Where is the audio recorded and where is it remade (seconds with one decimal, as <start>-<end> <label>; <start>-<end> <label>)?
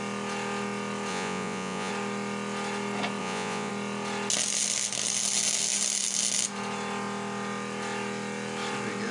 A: 0.0-1.1 recorded; 1.1-1.9 remade; 1.9-3.2 recorded; 3.2-3.7 remade; 3.7-9.1 recorded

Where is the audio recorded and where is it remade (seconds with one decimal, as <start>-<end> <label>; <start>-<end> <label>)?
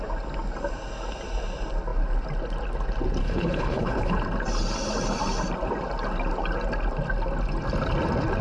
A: 0.0-3.2 recorded; 3.2-4.2 remade; 4.2-8.4 recorded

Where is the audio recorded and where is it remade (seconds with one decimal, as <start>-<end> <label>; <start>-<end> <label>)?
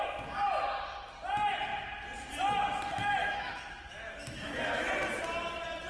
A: 0.0-3.2 recorded; 3.2-4.9 remade; 4.9-5.9 recorded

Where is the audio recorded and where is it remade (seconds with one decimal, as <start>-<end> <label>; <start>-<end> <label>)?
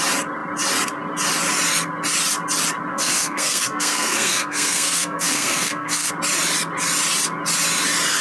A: 0.0-2.9 recorded; 2.9-6.1 remade; 6.1-8.2 recorded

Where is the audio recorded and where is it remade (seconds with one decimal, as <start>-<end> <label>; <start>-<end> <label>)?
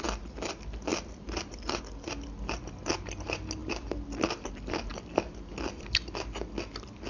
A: 0.0-0.9 recorded; 0.9-1.8 remade; 1.8-7.1 recorded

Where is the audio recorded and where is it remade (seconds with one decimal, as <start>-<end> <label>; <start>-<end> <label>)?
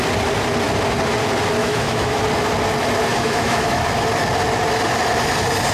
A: 0.0-1.6 recorded; 1.6-2.2 remade; 2.2-3.1 recorded; 3.1-3.8 remade; 3.8-5.7 recorded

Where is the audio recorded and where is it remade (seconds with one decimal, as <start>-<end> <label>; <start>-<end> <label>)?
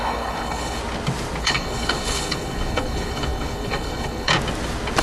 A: 0.0-0.8 remade; 0.8-1.4 recorded; 1.4-4.3 remade; 4.3-5.0 recorded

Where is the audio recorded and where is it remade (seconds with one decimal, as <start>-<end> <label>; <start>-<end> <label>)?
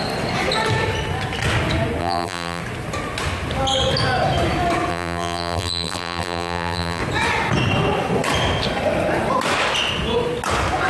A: 0.0-2.0 recorded; 2.0-2.6 remade; 2.6-4.9 recorded; 4.9-7.0 remade; 7.0-10.9 recorded